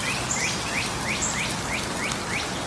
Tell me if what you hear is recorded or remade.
recorded